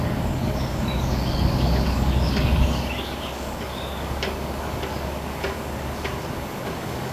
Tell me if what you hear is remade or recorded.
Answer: remade